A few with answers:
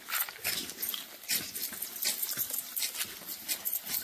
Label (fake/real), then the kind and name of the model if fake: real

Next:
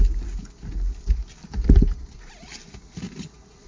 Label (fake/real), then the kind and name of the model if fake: real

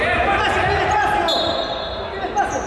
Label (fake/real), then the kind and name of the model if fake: real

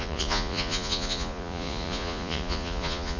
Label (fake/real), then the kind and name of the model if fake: fake, vocoder, Vocos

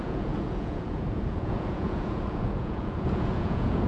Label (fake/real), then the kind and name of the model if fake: fake, vocoder, Vocos